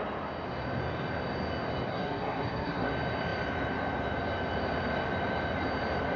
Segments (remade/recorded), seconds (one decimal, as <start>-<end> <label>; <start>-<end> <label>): 0.0-1.9 recorded; 1.9-2.9 remade; 2.9-6.2 recorded